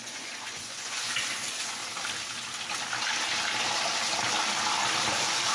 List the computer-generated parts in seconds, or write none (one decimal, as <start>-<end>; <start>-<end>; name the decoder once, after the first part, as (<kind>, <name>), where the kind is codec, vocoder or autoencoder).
0.0-1.8 (vocoder, Vocos); 5.1-5.5